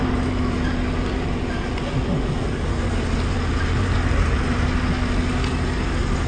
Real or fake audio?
real